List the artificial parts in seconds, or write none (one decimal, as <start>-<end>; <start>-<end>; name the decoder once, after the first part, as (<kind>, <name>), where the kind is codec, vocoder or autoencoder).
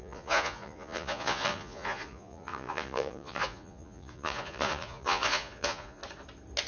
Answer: 0.0-6.0 (vocoder, Vocos)